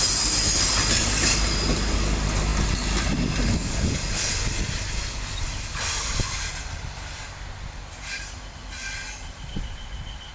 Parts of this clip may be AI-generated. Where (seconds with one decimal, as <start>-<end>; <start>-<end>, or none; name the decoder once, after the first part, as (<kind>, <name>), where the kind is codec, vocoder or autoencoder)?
none